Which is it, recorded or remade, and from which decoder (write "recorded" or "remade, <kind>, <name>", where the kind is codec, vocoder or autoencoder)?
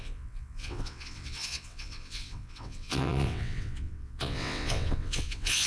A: remade, vocoder, WaveNeXt